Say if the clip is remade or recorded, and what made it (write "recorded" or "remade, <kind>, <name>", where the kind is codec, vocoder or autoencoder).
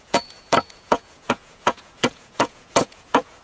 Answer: remade, vocoder, Vocos